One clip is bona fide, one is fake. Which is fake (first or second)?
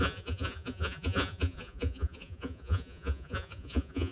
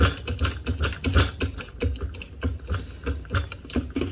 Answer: first